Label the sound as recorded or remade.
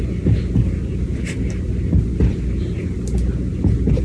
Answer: recorded